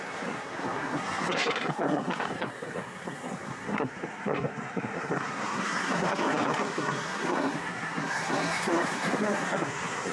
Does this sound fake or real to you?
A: fake